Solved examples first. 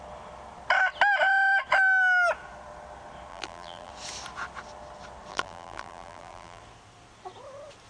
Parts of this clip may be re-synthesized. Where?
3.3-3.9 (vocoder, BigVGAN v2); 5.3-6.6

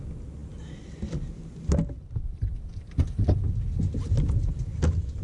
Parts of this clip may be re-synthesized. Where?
none

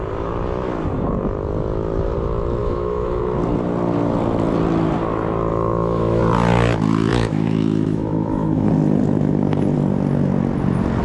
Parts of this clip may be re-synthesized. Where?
2.6-3.2 (autoencoder, DAC-VAE); 5.5-6.2; 7.1-8.7

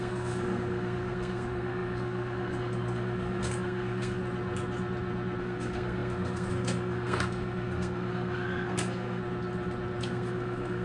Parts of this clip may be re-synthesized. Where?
0.0-4.2 (codec, SNAC); 5.4-9.2; 10.0-10.8

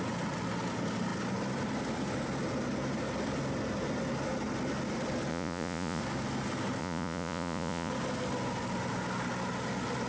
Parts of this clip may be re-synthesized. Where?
5.3-6.0 (vocoder, Vocos); 6.8-7.9